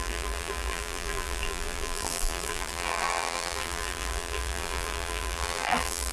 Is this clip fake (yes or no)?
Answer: yes